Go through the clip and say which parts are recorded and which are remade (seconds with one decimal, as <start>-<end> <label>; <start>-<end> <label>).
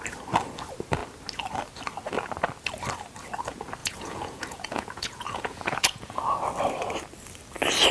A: 0.0-3.8 recorded; 3.8-6.2 remade; 6.2-7.9 recorded